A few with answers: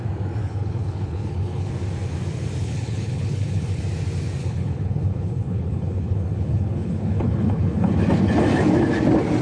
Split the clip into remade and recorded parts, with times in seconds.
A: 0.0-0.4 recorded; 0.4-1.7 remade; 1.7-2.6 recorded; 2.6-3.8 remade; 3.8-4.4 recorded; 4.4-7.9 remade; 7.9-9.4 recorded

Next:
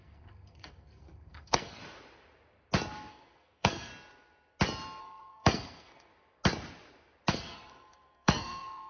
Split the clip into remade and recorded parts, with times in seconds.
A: 0.0-1.8 remade; 1.8-3.1 recorded; 3.1-3.9 remade; 3.9-5.0 recorded; 5.0-6.1 remade; 6.1-7.3 recorded; 7.3-8.9 remade